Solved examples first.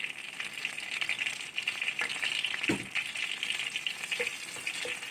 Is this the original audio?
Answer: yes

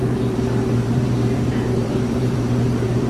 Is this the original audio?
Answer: no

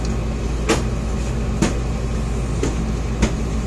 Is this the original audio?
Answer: yes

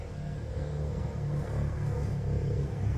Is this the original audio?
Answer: no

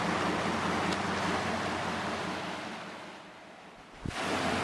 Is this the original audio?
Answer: yes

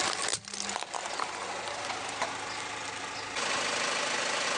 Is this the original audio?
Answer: yes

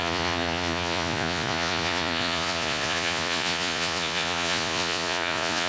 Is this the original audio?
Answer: no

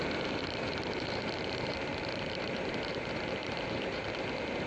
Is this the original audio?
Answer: no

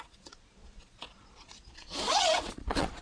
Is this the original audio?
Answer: no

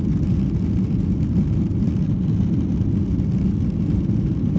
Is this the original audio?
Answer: yes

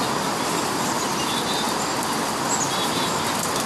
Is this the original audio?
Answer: yes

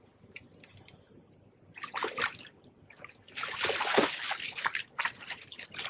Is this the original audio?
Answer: yes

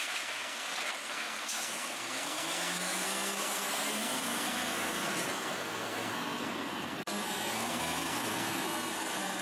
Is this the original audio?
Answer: no